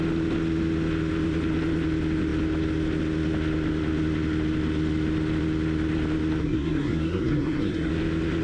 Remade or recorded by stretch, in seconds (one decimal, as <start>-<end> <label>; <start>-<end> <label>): 0.0-6.4 recorded; 6.4-7.9 remade; 7.9-8.4 recorded